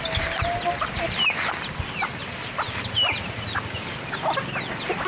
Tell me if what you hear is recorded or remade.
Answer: recorded